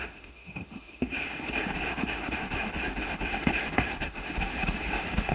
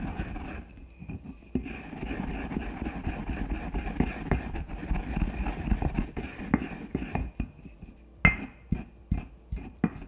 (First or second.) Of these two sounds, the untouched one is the second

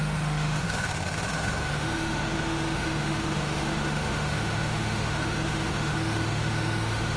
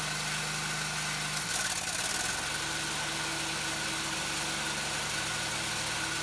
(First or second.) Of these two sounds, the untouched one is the second